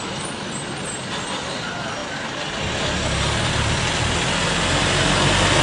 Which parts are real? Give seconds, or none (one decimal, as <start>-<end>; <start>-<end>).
0.0-5.6